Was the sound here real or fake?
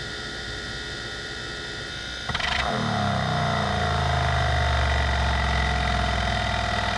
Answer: real